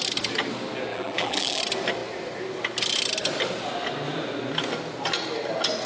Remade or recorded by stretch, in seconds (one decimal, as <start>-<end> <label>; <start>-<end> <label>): 0.0-0.9 recorded; 0.9-1.6 remade; 1.6-5.9 recorded